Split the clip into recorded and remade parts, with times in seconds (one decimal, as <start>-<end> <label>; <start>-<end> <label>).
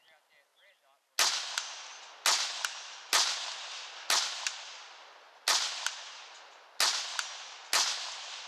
0.0-8.5 recorded